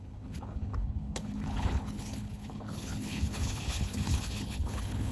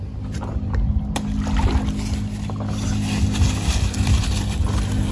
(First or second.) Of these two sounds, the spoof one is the first